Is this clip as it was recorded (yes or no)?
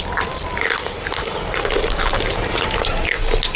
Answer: yes